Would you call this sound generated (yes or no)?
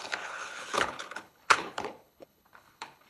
yes